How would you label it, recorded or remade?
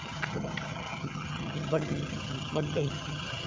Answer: remade